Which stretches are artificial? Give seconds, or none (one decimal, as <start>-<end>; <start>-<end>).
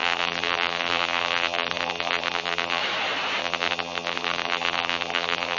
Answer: 0.0-2.8; 3.4-5.6